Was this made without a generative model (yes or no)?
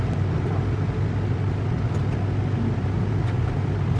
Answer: yes